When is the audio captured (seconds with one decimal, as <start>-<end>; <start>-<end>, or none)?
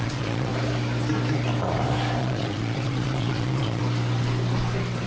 0.5-2.2; 3.8-5.1